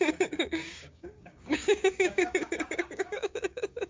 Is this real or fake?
fake